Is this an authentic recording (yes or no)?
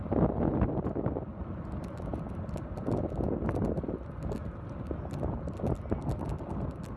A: yes